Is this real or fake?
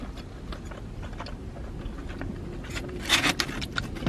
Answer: real